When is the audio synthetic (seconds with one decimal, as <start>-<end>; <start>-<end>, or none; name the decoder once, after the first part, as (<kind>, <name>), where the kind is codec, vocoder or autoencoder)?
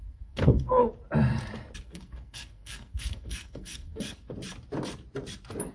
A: 0.0-0.8 (codec, SNAC); 1.8-4.3